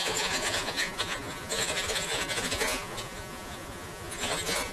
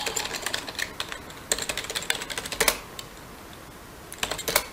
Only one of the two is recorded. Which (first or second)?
second